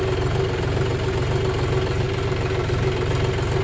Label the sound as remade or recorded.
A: recorded